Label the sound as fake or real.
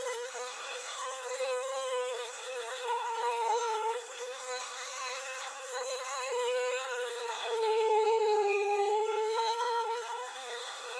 fake